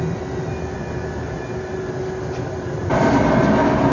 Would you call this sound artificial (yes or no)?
no